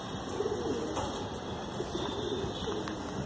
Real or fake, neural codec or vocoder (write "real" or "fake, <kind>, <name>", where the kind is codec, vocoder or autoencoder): real